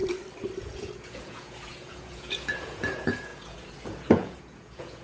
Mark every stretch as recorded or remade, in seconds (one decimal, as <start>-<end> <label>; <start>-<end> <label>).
0.0-0.6 recorded; 0.6-5.0 remade